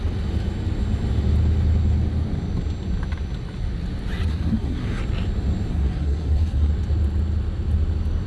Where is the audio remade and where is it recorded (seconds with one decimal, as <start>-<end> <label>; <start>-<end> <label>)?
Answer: 0.0-4.3 recorded; 4.3-5.0 remade; 5.0-5.7 recorded; 5.7-6.7 remade; 6.7-8.3 recorded